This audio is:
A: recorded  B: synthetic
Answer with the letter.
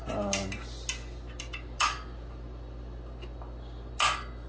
A